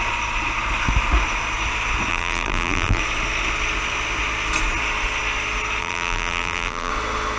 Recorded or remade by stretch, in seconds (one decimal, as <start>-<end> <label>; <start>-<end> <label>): 0.0-2.1 recorded; 2.1-3.0 remade; 3.0-5.8 recorded; 5.8-6.9 remade; 6.9-7.4 recorded